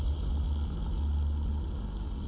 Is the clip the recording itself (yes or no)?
yes